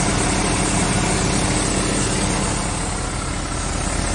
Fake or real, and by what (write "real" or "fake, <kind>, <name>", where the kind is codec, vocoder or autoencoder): real